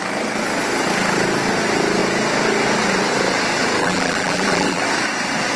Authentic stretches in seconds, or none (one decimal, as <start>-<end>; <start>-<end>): 0.0-3.8; 4.8-5.6